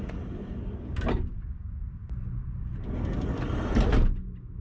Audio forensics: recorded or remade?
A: recorded